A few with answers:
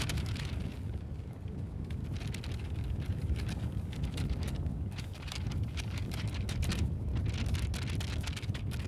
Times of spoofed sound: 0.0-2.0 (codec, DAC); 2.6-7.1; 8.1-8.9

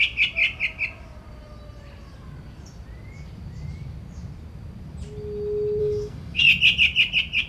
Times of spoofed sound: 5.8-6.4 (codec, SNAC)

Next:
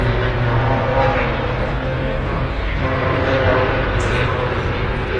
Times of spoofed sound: 1.7-2.8 (codec, DAC)